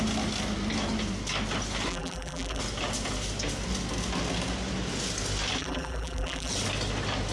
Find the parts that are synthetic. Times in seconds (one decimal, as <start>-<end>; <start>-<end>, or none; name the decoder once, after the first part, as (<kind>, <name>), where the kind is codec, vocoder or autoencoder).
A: 1.9-2.6 (vocoder, BigVGAN v2); 5.6-6.5